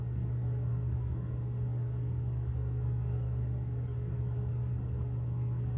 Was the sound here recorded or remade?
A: remade